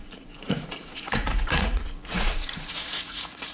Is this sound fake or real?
fake